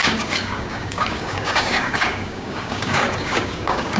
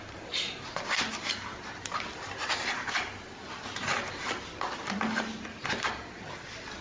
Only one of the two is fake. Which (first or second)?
first